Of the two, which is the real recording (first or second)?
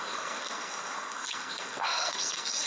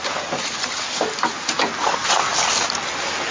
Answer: second